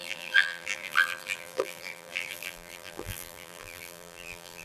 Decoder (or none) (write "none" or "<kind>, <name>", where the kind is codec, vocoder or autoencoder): vocoder, BigVGAN v2